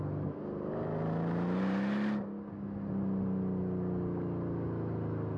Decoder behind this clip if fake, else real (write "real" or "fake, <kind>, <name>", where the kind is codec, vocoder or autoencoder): real